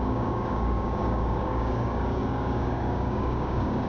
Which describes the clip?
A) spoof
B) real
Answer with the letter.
A